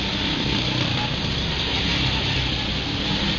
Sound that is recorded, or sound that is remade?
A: recorded